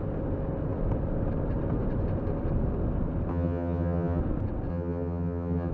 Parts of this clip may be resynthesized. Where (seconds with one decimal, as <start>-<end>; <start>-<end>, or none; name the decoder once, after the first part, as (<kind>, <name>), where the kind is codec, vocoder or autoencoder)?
3.3-4.2 (vocoder, HiFi-GAN); 4.7-5.7